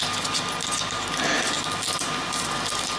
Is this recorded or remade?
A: recorded